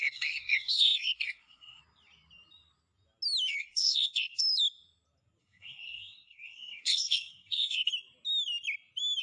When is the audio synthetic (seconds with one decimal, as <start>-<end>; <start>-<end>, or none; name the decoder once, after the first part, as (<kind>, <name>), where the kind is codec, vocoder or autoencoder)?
0.0-1.8 (codec, SNAC); 3.6-4.4; 5.4-7.9